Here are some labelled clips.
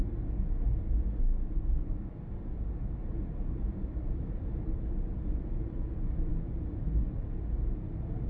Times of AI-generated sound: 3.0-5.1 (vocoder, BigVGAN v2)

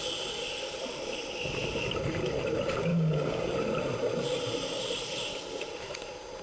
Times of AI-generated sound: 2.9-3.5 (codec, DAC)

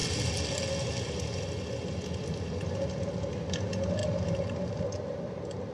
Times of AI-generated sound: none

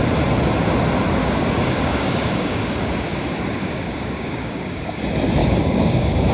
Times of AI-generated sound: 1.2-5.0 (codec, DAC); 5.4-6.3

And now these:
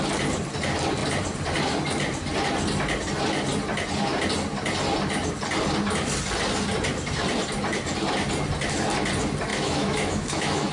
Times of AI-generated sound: 9.5-10.7 (autoencoder, DAC-VAE)

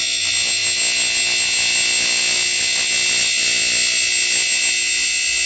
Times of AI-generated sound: none